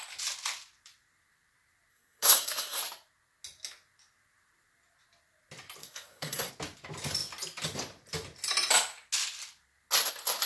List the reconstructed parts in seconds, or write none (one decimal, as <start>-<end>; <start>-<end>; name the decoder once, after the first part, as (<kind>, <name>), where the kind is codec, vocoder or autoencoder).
1.9-2.8 (codec, SNAC); 5.8-6.5